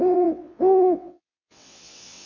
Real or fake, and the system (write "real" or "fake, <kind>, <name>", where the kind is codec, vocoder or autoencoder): fake, vocoder, WaveNeXt